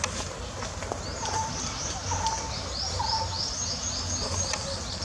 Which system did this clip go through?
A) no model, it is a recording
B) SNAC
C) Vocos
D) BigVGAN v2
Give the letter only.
A